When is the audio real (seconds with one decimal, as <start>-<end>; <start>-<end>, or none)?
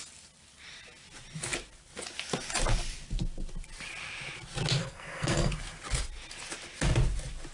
0.0-4.8; 5.5-7.5